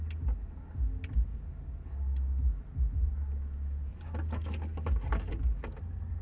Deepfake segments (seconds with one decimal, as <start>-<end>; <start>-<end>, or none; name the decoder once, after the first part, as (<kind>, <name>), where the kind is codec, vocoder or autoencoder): none